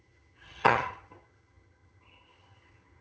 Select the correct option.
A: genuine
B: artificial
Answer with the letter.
B